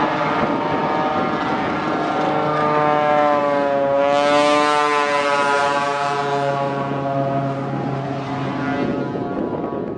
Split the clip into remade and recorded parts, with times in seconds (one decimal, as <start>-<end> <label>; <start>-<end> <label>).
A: 0.0-10.0 recorded